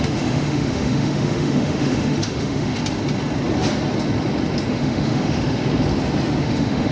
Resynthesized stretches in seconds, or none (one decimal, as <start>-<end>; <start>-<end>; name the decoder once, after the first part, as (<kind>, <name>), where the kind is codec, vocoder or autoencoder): 0.0-2.8 (autoencoder, DAC-VAE); 4.7-5.6; 6.4-6.9